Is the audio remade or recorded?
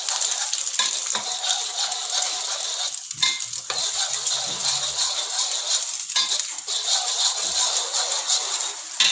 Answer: recorded